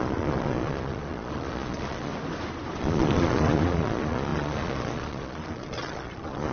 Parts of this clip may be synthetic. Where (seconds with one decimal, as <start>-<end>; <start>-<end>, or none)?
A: 0.0-2.1; 2.8-6.5